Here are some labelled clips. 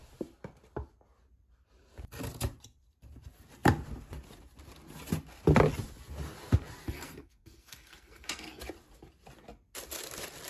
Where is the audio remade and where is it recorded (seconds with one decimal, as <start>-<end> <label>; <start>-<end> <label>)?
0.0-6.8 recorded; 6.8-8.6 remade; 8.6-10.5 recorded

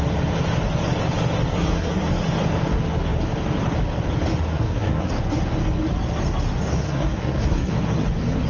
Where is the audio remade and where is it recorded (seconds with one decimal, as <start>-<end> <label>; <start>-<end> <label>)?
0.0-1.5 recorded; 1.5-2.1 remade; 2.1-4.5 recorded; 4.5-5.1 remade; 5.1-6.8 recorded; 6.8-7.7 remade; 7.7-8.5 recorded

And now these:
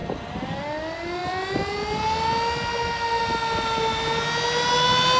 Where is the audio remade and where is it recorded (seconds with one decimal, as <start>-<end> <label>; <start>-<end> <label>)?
0.0-5.2 recorded

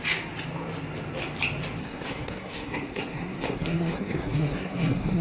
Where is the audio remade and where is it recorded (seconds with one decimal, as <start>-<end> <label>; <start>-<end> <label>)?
0.0-1.8 recorded; 1.8-5.2 remade

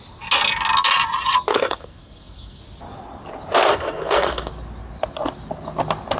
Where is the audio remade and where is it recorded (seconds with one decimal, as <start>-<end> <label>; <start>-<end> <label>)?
0.0-1.5 recorded; 1.5-2.6 remade; 2.6-3.7 recorded; 3.7-4.5 remade; 4.5-6.2 recorded